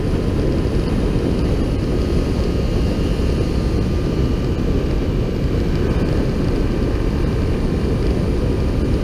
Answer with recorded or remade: recorded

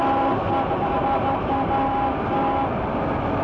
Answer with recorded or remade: recorded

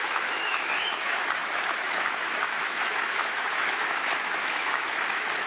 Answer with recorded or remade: remade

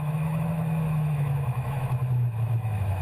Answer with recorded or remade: remade